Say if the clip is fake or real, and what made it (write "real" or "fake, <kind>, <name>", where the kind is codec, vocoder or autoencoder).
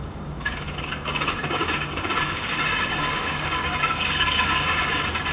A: fake, codec, DAC